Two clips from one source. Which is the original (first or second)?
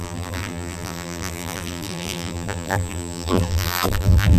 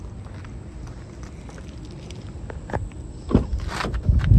second